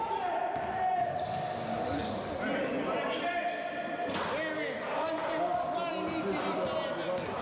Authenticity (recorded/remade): recorded